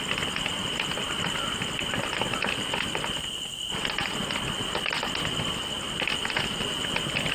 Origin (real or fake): real